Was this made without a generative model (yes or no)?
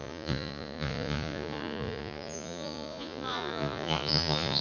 no